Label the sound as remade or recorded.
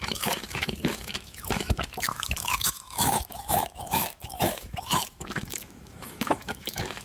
remade